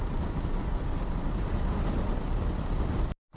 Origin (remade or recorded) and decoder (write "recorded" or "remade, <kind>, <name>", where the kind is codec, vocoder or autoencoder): recorded